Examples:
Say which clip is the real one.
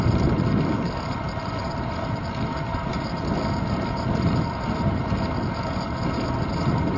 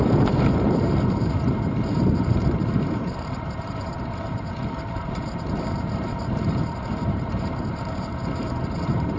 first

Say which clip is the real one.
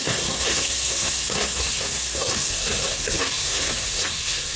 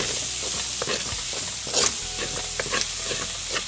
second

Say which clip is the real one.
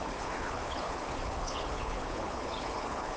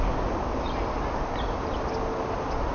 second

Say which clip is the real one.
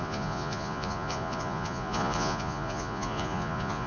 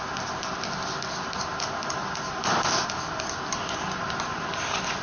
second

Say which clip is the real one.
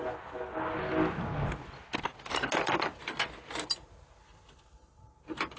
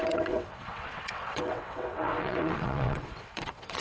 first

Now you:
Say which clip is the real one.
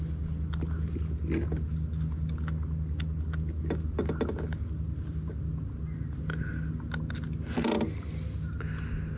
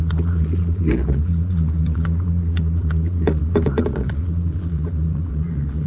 first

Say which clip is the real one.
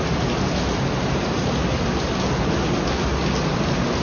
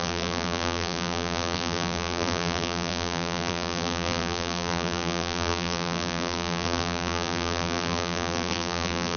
first